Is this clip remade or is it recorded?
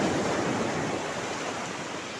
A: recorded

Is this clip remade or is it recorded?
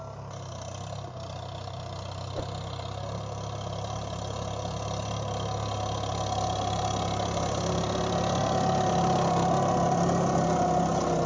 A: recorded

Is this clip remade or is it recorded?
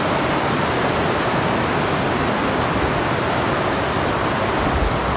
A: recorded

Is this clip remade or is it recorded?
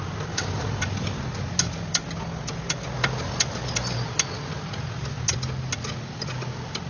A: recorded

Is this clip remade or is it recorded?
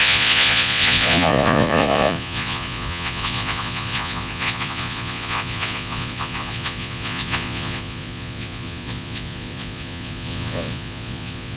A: remade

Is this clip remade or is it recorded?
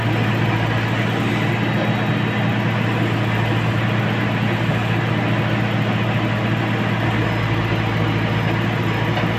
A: recorded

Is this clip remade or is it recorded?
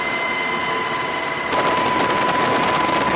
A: recorded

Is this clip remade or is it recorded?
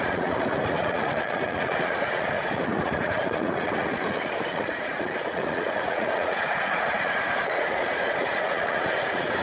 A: remade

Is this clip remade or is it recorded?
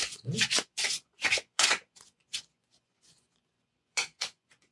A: remade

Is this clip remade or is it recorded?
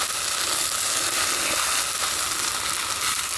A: recorded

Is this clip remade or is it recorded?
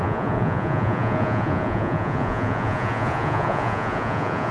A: remade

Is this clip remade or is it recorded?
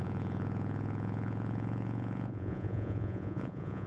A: remade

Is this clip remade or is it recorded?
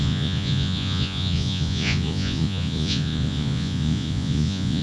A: remade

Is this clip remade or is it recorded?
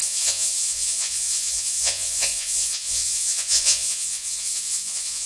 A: remade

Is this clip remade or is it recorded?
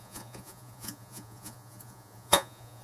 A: remade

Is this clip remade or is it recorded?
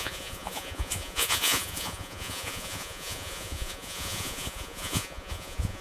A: remade